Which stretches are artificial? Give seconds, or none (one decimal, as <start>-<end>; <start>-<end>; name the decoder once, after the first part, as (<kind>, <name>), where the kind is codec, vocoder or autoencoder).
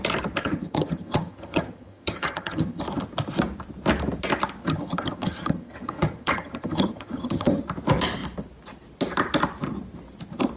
0.4-2.8 (vocoder, HiFi-GAN); 4.6-7.6